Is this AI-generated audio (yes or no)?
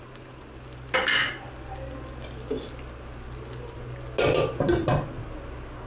no